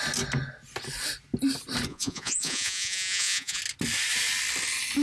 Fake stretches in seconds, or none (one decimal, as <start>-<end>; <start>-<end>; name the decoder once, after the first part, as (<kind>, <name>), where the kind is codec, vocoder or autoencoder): 1.9-3.6 (vocoder, Vocos)